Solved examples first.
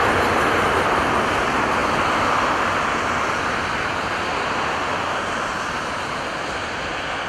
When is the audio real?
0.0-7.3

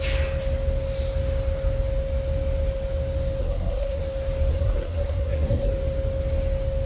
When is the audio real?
0.0-3.4; 4.0-4.5; 5.7-6.9

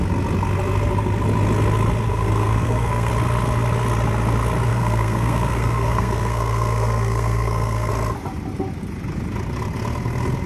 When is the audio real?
0.0-2.1; 3.1-4.7; 7.9-10.5

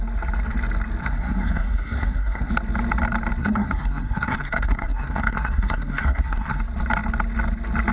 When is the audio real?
0.0-1.0; 2.5-3.4; 6.6-7.9

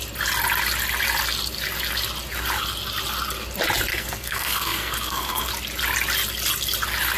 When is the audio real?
0.0-3.9; 5.5-7.2

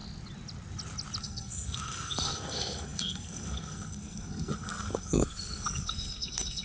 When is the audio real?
0.0-1.2

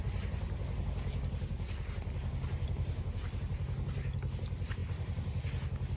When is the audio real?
0.0-6.0